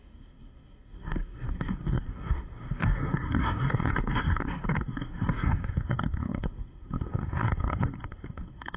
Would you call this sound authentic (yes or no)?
no